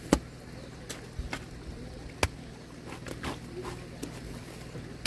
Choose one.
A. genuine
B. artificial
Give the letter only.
A